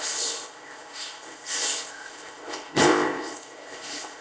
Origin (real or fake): fake